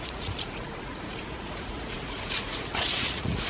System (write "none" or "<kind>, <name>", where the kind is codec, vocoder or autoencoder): vocoder, Vocos